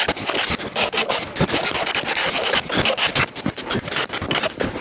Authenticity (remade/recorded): recorded